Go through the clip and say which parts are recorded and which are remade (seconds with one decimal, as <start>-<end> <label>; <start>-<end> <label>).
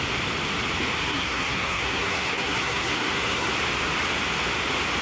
0.0-1.0 recorded; 1.0-3.5 remade; 3.5-5.0 recorded